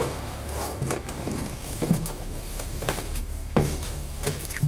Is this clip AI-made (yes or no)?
yes